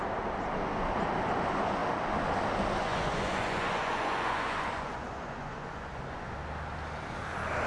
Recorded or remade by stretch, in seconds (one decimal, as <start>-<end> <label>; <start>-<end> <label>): 0.0-2.8 recorded; 2.8-6.3 remade; 6.3-7.7 recorded